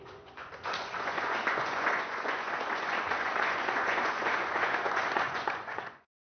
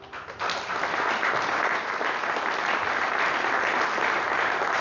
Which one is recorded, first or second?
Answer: second